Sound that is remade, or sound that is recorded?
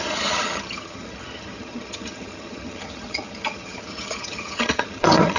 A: remade